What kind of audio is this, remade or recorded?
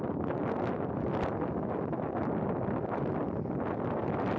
recorded